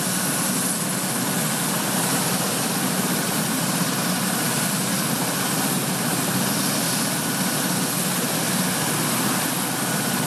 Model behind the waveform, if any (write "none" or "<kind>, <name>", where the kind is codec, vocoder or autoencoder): none